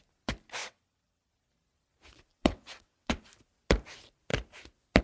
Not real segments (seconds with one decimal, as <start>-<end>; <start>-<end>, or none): 0.6-1.3; 2.3-3.3